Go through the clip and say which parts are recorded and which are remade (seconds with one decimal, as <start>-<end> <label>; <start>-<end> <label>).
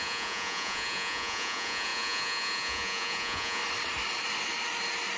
0.0-3.6 remade; 3.6-5.2 recorded